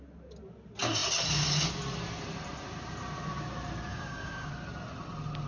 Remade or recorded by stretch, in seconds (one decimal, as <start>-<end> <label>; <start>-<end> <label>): 0.0-3.9 recorded; 3.9-4.5 remade; 4.5-5.5 recorded